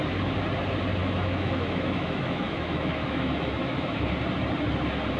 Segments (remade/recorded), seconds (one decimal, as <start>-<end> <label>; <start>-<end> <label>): 0.0-1.0 recorded; 1.0-4.1 remade; 4.1-5.2 recorded